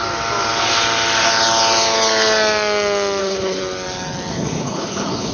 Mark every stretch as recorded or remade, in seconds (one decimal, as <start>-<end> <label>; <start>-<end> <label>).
0.0-3.2 recorded; 3.2-3.6 remade; 3.6-4.3 recorded; 4.3-5.3 remade